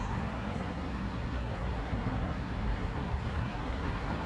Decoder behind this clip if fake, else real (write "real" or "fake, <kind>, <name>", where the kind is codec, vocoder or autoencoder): fake, codec, SNAC